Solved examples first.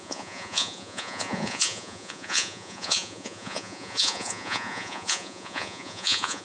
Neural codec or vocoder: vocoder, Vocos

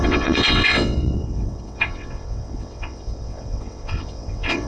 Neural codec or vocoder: vocoder, WaveNeXt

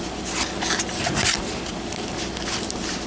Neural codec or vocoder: none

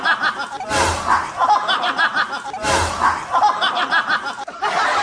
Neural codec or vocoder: none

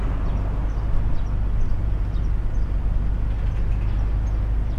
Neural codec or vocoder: none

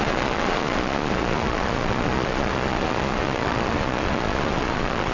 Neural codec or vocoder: vocoder, Vocos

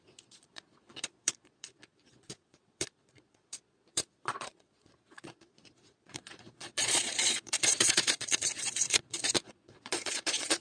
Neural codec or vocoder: vocoder, Vocos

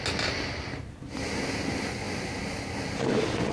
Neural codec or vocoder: none